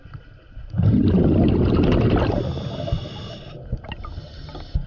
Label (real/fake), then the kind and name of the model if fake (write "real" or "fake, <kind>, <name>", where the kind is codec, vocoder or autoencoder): real